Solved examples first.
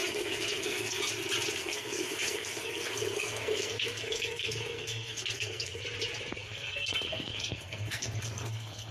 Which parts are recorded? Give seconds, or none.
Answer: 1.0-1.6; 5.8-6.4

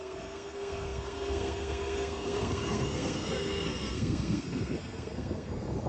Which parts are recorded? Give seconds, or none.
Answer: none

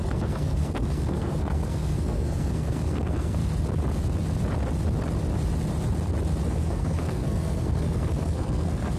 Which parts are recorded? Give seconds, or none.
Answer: 3.4-6.5

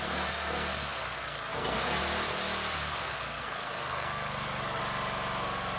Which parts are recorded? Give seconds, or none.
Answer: 2.0-2.9; 4.8-5.8

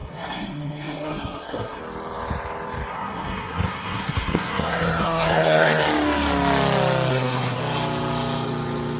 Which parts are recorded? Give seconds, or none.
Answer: 1.8-2.9; 5.8-7.1; 7.6-9.0

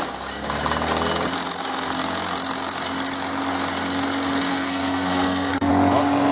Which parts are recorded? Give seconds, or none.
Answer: 0.0-4.5; 5.7-6.3